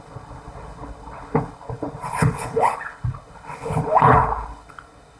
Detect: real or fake fake